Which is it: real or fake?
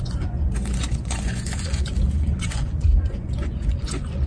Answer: fake